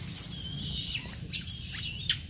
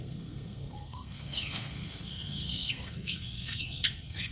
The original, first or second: first